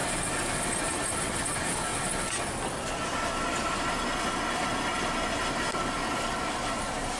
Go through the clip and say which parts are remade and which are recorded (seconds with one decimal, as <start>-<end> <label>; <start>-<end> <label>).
0.0-7.2 recorded